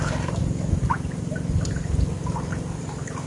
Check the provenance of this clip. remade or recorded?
recorded